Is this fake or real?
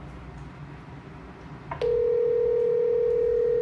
real